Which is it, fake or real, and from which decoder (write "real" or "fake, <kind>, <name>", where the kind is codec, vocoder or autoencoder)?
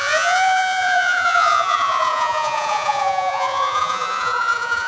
fake, vocoder, Vocos